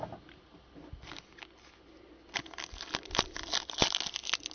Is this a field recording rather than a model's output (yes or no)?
yes